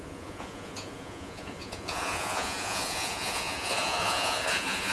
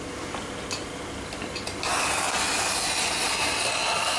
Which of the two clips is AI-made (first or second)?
first